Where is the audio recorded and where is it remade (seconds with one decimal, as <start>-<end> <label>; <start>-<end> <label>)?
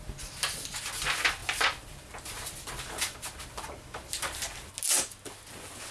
0.0-5.9 recorded